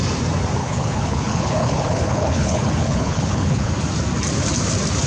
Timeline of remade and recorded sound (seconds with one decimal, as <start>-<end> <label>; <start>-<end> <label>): 0.0-0.6 recorded; 0.6-3.7 remade; 3.7-5.1 recorded